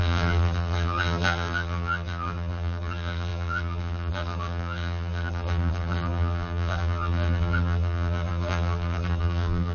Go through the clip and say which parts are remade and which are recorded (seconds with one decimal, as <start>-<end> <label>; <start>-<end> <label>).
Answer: 0.0-9.7 remade